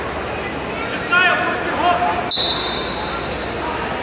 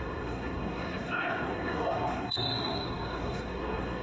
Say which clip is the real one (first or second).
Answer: first